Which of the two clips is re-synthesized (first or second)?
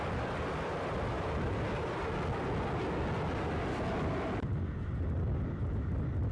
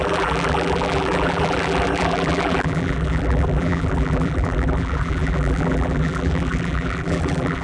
second